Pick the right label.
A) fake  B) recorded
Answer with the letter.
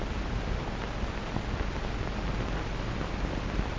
B